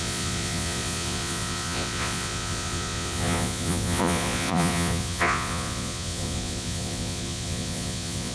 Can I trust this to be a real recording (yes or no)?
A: no